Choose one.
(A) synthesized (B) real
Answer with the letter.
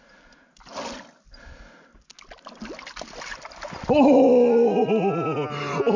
B